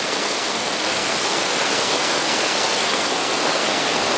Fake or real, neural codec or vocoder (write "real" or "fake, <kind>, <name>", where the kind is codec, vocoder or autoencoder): fake, codec, SNAC